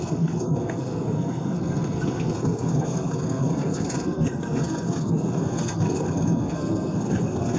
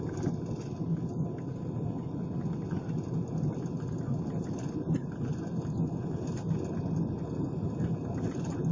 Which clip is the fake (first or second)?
first